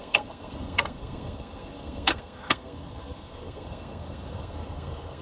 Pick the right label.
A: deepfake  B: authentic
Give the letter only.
A